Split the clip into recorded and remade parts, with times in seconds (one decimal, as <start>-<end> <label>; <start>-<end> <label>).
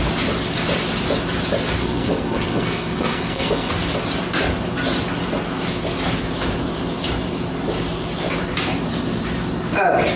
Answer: 0.0-1.8 recorded; 1.8-3.7 remade; 3.7-10.2 recorded